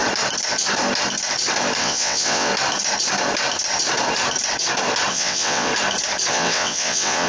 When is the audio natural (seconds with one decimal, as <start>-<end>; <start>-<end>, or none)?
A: 0.0-1.8; 2.5-5.1; 5.7-6.3